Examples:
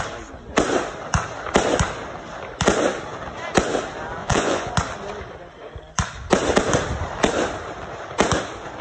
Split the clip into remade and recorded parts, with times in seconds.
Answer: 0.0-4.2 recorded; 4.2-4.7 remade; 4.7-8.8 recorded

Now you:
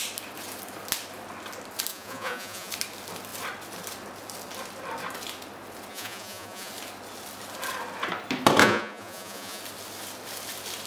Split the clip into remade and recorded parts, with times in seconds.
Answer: 0.0-1.9 recorded; 1.9-2.7 remade; 2.7-5.9 recorded; 5.9-6.7 remade; 6.7-8.6 recorded; 8.6-9.6 remade; 9.6-10.9 recorded

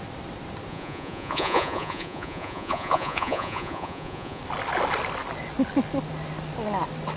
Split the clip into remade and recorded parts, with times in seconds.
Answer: 0.0-0.7 recorded; 0.7-4.4 remade; 4.4-7.2 recorded